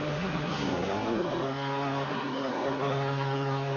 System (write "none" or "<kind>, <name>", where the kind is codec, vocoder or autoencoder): codec, SNAC